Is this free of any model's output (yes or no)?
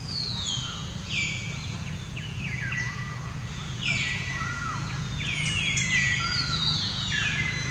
no